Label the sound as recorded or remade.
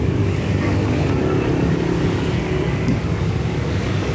remade